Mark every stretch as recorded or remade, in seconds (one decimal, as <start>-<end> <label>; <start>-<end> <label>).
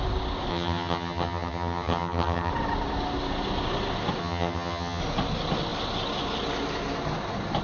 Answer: 0.0-0.5 recorded; 0.5-2.5 remade; 2.5-4.2 recorded; 4.2-5.0 remade; 5.0-7.6 recorded